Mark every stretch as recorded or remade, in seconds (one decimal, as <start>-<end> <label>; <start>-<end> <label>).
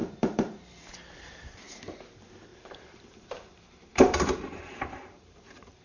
0.0-1.5 remade; 1.5-2.5 recorded; 2.5-5.8 remade